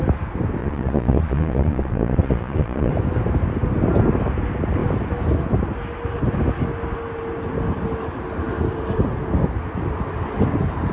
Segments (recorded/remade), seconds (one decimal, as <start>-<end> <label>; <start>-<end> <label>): 0.0-0.6 recorded; 0.6-2.9 remade; 2.9-10.9 recorded